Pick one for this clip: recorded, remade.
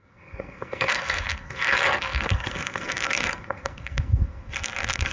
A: remade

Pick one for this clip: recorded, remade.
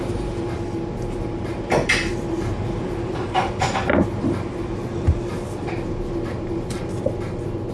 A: recorded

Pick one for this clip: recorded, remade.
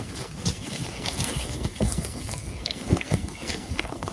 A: remade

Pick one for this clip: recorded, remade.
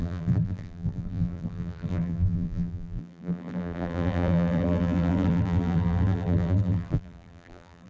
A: remade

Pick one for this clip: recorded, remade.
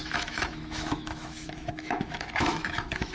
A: remade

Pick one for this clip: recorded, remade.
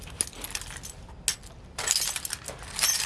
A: recorded